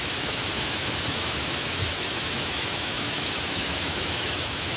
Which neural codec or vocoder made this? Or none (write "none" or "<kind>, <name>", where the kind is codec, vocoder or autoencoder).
autoencoder, DAC-VAE